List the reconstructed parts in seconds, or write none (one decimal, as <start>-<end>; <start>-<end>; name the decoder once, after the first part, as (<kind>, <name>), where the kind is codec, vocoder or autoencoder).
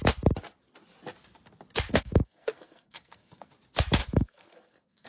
1.9-3.5 (codec, SNAC); 4.0-5.1